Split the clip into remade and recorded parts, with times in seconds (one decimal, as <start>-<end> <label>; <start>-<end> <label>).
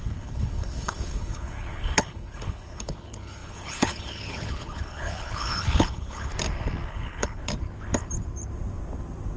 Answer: 0.0-6.3 remade; 6.3-6.9 recorded; 6.9-7.4 remade; 7.4-9.4 recorded